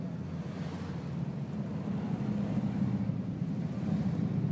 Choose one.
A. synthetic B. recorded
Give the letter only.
B